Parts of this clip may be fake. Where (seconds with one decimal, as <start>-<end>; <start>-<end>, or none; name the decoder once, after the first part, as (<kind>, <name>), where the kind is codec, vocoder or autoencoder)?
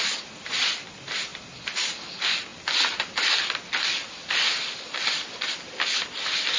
0.0-6.6 (vocoder, BigVGAN v2)